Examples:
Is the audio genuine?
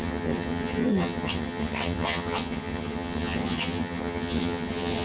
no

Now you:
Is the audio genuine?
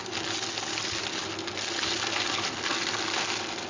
yes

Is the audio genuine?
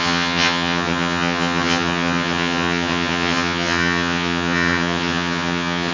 no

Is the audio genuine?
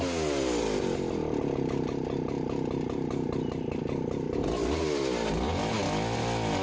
yes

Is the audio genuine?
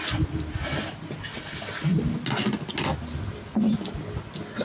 yes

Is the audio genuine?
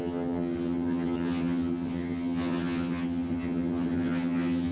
no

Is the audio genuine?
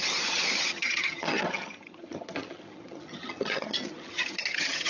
no